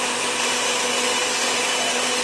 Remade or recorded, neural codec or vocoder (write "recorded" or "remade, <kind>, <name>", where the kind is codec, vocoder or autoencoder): recorded